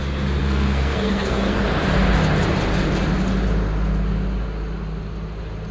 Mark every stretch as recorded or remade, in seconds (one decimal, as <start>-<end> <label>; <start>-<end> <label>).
0.0-0.4 recorded; 0.4-1.6 remade; 1.6-5.7 recorded